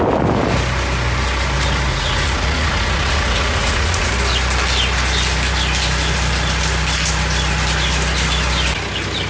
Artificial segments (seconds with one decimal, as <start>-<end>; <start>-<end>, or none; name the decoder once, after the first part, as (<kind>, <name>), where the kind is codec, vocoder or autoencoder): 1.9-4.1 (vocoder, Vocos)